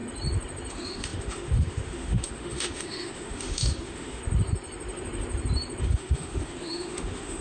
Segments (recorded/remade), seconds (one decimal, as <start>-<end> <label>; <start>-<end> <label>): 0.0-0.7 recorded; 0.7-4.2 remade; 4.2-5.8 recorded; 5.8-7.4 remade